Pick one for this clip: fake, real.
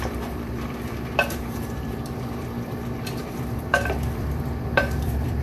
fake